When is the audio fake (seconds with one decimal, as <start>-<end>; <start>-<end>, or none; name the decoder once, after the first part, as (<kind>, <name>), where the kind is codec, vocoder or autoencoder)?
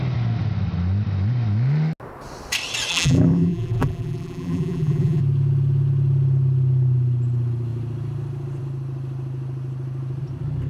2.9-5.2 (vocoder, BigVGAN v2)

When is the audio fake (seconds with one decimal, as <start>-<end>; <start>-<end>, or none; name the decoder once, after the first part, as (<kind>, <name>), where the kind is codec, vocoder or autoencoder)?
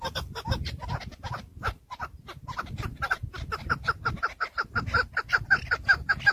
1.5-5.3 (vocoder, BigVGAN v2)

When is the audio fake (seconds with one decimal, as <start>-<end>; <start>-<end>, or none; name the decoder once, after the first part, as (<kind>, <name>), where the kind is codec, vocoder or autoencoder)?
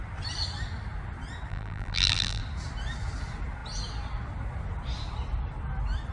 1.5-2.4 (vocoder, BigVGAN v2)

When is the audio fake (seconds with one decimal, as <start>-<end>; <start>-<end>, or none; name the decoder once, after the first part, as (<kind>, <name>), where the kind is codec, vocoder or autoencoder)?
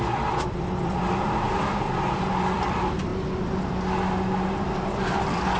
0.0-3.1 (vocoder, BigVGAN v2); 4.9-5.6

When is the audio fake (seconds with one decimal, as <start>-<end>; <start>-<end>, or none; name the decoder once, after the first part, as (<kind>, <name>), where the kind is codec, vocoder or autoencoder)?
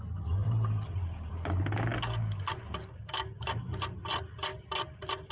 0.4-1.3 (vocoder, BigVGAN v2)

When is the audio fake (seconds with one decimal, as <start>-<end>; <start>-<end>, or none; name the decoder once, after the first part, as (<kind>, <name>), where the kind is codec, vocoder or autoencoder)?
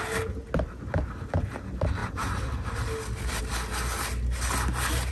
2.0-3.4 (vocoder, BigVGAN v2)